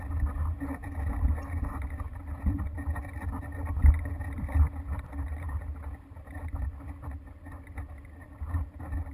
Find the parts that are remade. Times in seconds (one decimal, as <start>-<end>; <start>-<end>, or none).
0.8-2.9